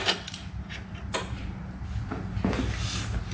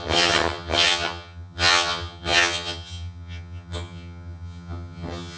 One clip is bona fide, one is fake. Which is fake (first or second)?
second